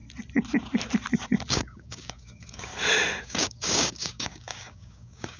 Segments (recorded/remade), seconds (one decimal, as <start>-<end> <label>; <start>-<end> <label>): 0.0-1.5 recorded; 1.5-2.7 remade; 2.7-3.2 recorded; 3.2-5.4 remade